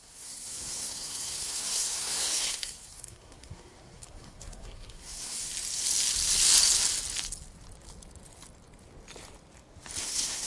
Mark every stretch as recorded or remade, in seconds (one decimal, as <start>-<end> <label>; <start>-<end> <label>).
0.0-5.5 remade; 5.5-10.0 recorded; 10.0-10.5 remade